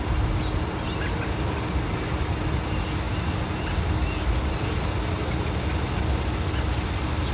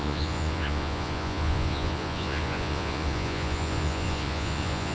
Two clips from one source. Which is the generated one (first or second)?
second